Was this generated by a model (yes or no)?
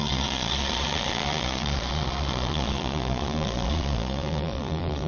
yes